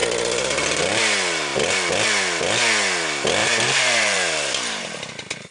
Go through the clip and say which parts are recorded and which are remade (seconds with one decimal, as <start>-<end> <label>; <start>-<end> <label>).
0.0-3.4 recorded; 3.4-5.1 remade; 5.1-5.5 recorded